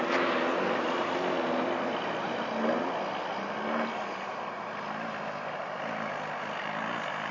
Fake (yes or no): no